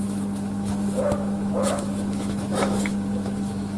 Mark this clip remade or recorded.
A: remade